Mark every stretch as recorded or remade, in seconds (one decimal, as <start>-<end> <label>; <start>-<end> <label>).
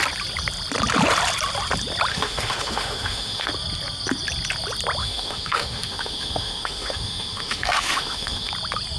0.0-2.1 recorded; 2.1-3.5 remade; 3.5-5.0 recorded; 5.0-8.5 remade; 8.5-9.0 recorded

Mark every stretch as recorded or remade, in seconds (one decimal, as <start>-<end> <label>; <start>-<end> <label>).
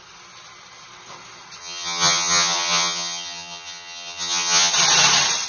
0.0-1.6 recorded; 1.6-4.7 remade; 4.7-5.5 recorded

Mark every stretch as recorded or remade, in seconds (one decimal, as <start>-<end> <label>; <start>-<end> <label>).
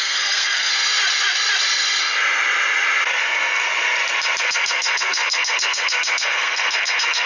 0.0-0.7 remade; 0.7-3.2 recorded; 3.2-3.6 remade; 3.6-4.4 recorded; 4.4-7.3 remade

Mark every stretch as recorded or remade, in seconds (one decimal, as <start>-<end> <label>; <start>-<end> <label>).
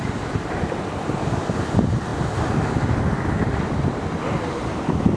0.0-5.2 recorded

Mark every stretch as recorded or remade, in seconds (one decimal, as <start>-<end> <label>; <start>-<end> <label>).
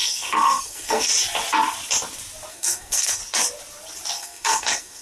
0.0-1.1 remade; 1.1-2.5 recorded; 2.5-3.2 remade; 3.2-4.1 recorded; 4.1-5.0 remade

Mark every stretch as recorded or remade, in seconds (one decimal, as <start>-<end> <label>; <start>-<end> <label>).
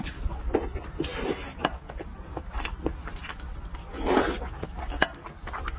0.0-5.8 recorded